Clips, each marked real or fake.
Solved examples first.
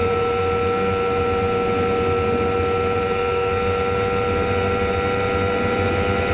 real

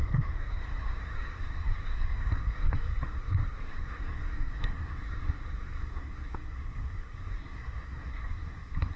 fake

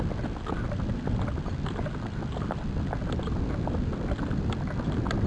real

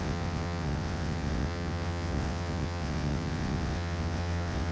fake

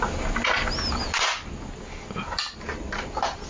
real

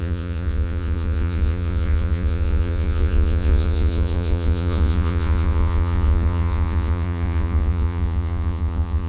fake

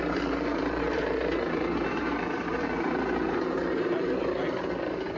fake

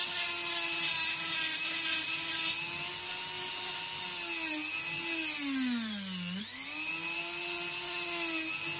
real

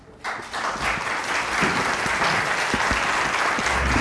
real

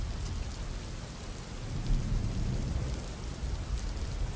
real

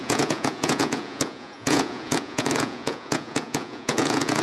fake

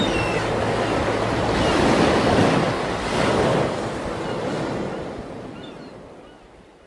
real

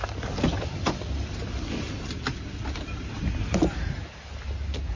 real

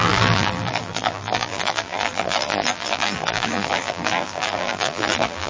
fake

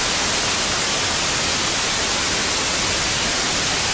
real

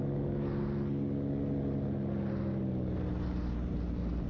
real